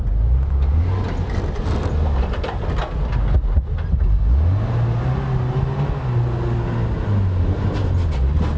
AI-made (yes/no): no